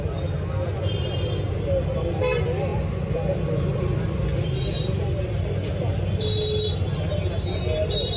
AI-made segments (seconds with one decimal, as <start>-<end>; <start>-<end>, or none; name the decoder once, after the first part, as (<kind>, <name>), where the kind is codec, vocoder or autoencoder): none